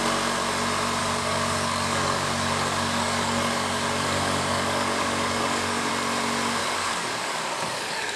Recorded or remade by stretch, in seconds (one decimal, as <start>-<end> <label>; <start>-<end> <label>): 0.0-1.0 recorded; 1.0-5.9 remade; 5.9-6.6 recorded; 6.6-8.2 remade